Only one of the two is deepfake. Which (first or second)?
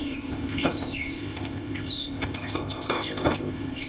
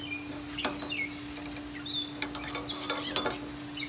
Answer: first